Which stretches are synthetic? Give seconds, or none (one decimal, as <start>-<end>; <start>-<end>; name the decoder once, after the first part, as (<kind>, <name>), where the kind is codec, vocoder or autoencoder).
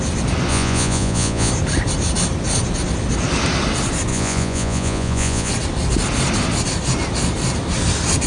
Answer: 0.5-1.5 (vocoder, Vocos); 4.1-5.5